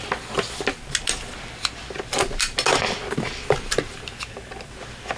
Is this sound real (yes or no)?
yes